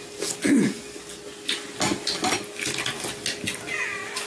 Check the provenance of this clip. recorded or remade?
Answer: recorded